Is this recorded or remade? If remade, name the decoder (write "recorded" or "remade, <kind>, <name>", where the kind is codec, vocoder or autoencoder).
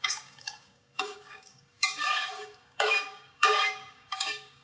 remade, codec, DAC